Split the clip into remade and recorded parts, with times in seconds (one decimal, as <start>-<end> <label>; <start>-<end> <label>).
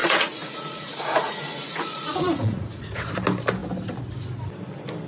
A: 0.0-3.1 remade; 3.1-5.1 recorded